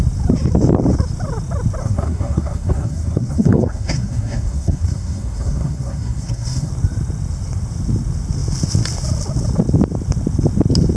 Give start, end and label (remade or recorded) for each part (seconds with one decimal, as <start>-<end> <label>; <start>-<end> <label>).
0.0-1.8 recorded; 1.8-6.7 remade; 6.7-11.0 recorded